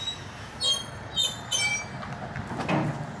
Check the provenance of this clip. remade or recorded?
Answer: recorded